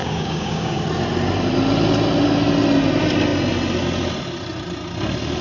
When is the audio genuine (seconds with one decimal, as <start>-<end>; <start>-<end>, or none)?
0.8-5.4